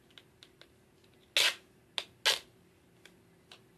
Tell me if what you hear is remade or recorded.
recorded